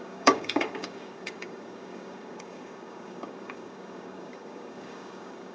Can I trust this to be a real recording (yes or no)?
no